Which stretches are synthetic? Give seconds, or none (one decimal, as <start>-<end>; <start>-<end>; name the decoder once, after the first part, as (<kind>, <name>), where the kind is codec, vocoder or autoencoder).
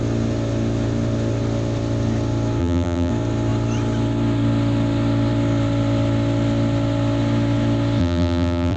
2.6-3.1 (vocoder, BigVGAN v2); 8.0-8.8